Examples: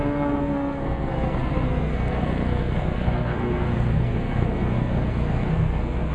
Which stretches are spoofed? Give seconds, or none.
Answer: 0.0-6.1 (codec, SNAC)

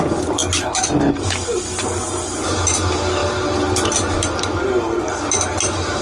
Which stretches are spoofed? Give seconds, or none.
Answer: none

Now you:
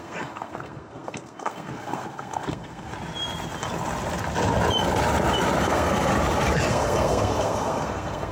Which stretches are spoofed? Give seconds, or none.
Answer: 0.0-2.9 (codec, SNAC); 5.6-6.1; 6.7-8.3

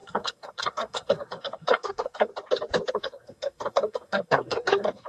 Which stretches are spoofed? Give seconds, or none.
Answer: 0.0-2.3 (codec, SNAC); 2.9-5.1

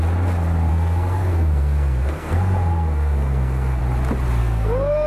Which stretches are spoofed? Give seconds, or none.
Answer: 0.7-3.8 (codec, SNAC); 4.4-5.1